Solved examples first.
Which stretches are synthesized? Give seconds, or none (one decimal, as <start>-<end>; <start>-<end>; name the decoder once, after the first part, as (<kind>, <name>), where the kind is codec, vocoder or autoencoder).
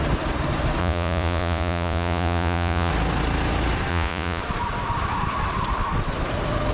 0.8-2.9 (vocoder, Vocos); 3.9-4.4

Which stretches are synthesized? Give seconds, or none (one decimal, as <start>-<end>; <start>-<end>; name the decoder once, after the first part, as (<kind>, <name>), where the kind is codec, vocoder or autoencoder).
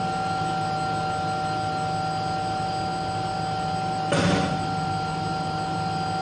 none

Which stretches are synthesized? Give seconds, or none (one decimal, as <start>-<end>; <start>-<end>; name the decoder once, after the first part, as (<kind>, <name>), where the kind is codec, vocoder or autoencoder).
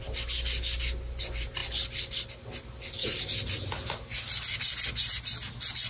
none